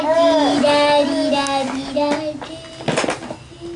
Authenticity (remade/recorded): recorded